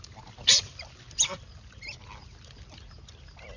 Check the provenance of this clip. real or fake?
real